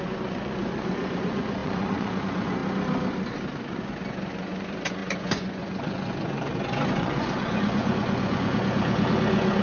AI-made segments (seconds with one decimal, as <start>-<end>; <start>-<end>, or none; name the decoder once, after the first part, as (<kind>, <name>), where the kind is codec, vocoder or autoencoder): 0.0-2.6 (vocoder, Vocos); 3.6-9.6

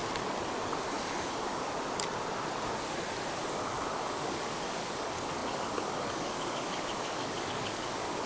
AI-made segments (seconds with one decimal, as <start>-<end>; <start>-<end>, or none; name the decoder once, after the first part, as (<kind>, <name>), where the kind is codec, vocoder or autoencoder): 3.7-8.3 (codec, DAC)

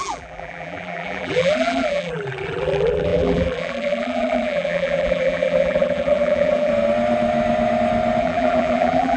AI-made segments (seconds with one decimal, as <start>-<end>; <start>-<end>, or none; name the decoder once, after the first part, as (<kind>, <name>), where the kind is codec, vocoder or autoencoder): 0.0-6.7 (vocoder, BigVGAN v2); 8.2-9.2

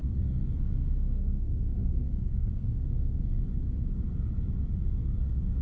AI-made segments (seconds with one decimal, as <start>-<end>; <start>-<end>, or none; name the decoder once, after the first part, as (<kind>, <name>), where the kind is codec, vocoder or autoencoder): 0.0-3.4 (codec, SNAC); 5.0-5.6